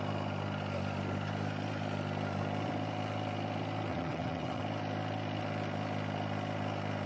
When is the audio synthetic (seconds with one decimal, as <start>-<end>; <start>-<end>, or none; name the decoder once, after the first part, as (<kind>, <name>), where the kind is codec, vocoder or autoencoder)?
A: 3.9-4.6 (vocoder, WaveNeXt)